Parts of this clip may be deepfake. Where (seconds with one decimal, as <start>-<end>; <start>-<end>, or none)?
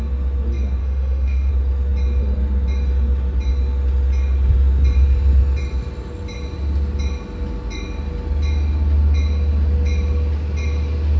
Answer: 0.8-1.5